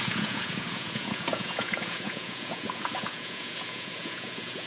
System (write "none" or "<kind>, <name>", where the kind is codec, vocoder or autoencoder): vocoder, Vocos